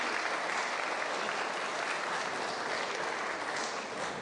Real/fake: real